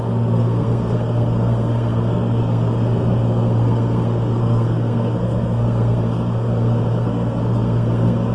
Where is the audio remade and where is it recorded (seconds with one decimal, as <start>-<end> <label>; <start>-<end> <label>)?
0.0-8.3 remade

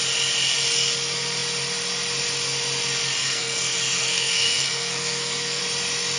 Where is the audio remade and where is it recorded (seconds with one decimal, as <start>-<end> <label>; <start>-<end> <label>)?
0.0-3.2 recorded; 3.2-5.6 remade; 5.6-6.2 recorded